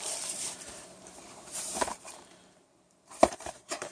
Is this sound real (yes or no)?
no